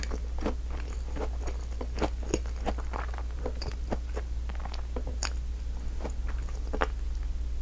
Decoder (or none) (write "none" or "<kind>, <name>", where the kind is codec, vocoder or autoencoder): none